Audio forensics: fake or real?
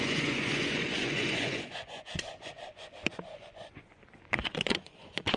fake